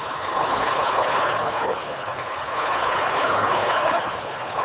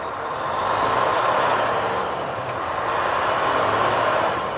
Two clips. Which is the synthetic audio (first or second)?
first